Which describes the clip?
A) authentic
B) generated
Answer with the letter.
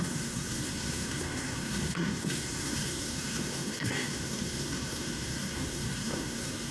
B